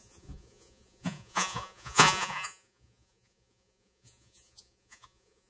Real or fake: fake